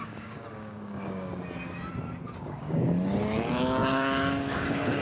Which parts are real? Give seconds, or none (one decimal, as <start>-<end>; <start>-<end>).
1.3-2.4